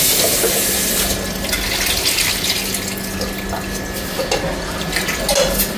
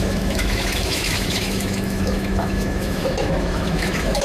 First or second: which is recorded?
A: first